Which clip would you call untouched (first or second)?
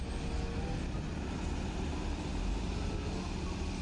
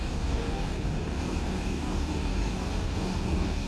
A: first